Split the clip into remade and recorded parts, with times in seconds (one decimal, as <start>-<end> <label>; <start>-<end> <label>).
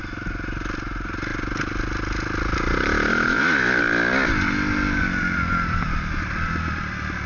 0.0-3.1 recorded; 3.1-3.8 remade; 3.8-7.3 recorded